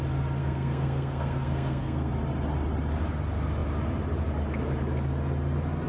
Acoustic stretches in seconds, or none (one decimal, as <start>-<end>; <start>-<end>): 0.0-0.4; 2.1-5.9